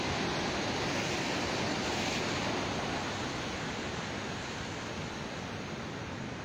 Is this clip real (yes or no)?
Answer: yes